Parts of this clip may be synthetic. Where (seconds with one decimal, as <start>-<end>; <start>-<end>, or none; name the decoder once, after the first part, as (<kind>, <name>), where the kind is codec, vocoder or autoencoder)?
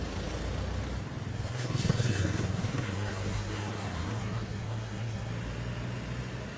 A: 1.3-5.3 (codec, SNAC)